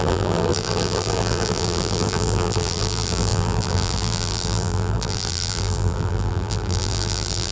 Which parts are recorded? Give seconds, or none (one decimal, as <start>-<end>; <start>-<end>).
none

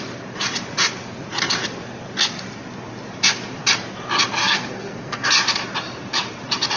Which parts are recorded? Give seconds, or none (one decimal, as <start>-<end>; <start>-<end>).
0.0-4.4; 5.3-6.8

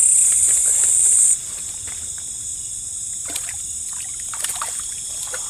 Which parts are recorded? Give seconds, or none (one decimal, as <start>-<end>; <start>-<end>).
0.0-2.5; 5.1-5.5

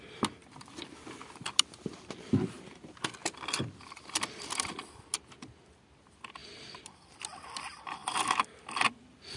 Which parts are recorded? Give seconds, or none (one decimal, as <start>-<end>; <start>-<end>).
0.0-3.2; 3.8-6.4; 7.1-9.4

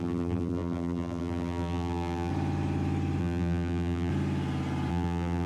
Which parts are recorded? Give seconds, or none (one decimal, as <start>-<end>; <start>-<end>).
2.3-3.2; 4.1-4.9

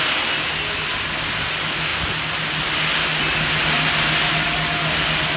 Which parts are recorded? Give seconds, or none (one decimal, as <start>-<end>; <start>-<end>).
0.0-5.4

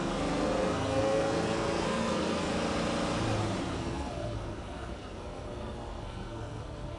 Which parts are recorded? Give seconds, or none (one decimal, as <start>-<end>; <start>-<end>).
2.5-3.7

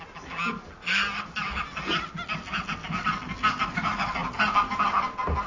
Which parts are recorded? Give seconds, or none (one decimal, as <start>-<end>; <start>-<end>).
0.0-5.5